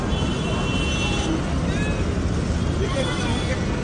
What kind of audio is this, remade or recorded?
recorded